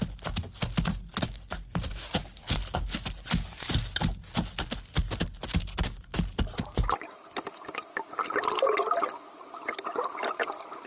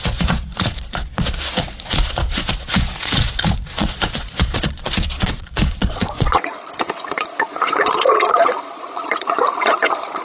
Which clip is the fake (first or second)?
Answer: second